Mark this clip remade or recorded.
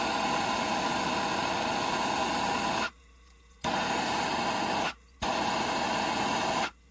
recorded